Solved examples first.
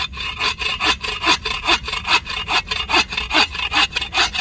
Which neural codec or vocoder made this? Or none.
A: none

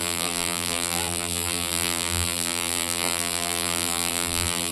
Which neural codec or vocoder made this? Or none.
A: vocoder, BigVGAN v2